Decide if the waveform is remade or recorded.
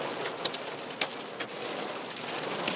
recorded